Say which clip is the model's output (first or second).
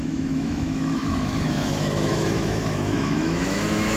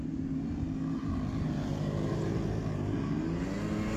first